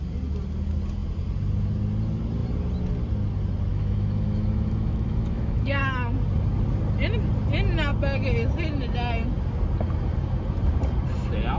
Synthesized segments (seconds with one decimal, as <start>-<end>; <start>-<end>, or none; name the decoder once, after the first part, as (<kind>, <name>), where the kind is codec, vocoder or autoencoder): 3.7-5.8 (autoencoder, DAC-VAE)